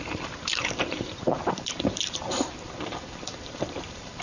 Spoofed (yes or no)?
yes